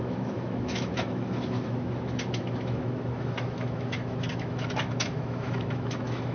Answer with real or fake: fake